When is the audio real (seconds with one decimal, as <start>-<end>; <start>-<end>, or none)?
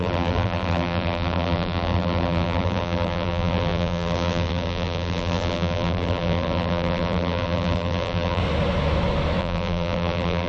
8.4-9.4